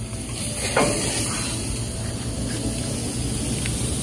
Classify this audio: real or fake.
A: real